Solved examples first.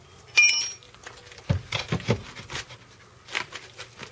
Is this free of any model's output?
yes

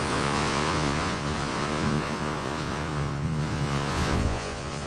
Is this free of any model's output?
no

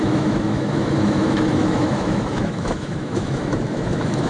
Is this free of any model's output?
no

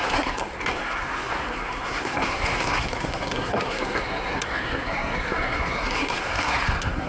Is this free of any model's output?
no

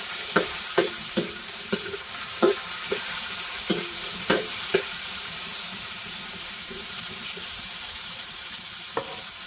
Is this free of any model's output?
no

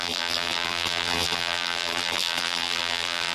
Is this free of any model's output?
no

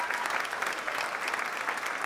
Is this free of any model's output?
yes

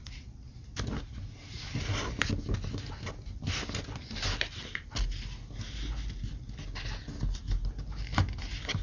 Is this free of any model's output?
yes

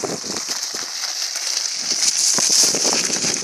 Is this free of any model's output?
no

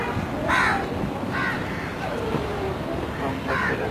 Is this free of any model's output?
yes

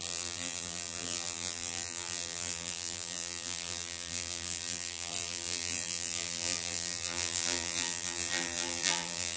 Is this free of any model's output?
no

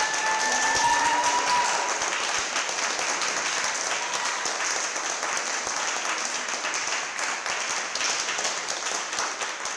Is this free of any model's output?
yes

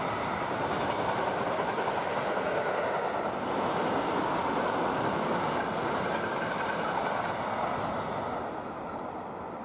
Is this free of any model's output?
yes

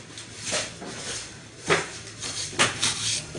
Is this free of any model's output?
yes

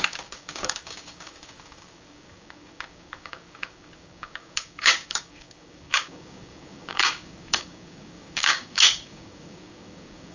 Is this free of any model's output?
no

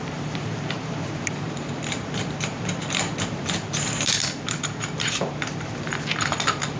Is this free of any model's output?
no